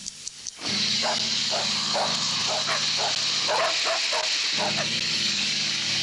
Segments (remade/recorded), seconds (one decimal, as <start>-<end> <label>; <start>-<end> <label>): 0.0-2.1 remade; 2.1-4.8 recorded; 4.8-6.0 remade